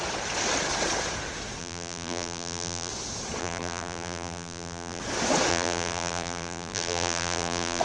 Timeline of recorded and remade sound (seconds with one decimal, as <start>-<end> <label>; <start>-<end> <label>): 0.0-1.6 recorded; 1.6-2.9 remade; 2.9-3.4 recorded; 3.4-5.0 remade; 5.0-5.5 recorded; 5.5-7.8 remade